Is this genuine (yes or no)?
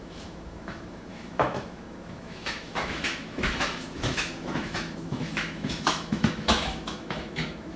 no